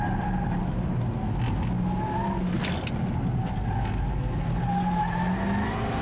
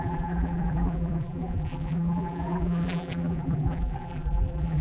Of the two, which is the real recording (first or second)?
first